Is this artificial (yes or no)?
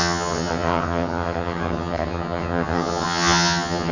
yes